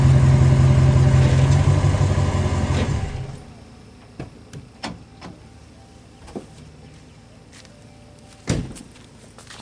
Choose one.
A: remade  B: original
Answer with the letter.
B